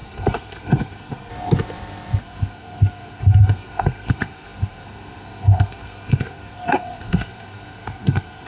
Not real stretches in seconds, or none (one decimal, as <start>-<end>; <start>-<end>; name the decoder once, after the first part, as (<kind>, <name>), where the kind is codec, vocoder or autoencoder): 0.0-1.3 (codec, SNAC); 2.2-8.5